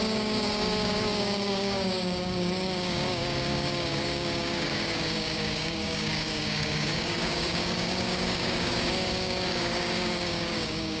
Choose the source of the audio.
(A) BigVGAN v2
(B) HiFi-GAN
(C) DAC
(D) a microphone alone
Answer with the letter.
C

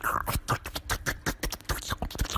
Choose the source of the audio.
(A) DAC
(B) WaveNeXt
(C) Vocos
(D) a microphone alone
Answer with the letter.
D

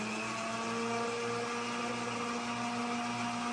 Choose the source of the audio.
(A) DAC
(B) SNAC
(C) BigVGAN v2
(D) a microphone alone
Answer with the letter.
D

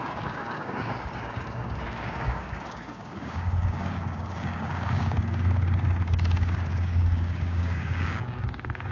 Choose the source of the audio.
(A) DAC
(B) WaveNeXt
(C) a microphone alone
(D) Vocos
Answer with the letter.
A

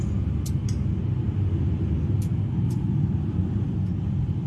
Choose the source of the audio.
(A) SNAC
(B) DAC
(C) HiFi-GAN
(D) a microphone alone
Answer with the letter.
D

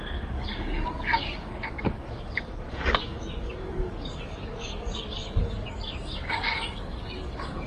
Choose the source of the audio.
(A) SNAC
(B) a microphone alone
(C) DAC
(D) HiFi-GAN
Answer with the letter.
C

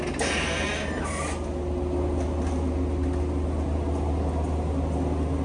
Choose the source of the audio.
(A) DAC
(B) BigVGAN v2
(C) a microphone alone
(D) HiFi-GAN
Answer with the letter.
C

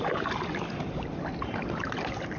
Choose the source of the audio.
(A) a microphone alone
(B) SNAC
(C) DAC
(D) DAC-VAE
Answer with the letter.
A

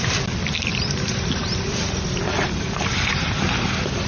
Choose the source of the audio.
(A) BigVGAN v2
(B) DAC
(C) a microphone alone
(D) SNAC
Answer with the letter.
C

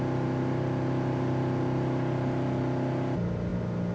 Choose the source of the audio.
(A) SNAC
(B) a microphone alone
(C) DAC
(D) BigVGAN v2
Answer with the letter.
B